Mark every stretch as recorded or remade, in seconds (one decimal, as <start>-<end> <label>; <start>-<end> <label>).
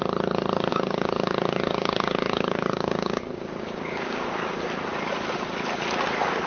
0.0-0.7 recorded; 0.7-4.6 remade; 4.6-6.5 recorded